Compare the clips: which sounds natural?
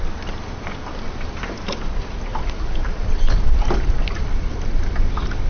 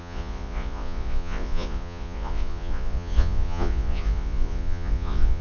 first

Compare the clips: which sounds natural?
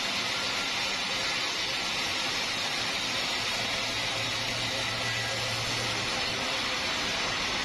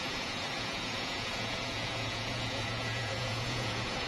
first